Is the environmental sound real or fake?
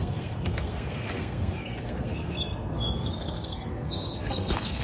fake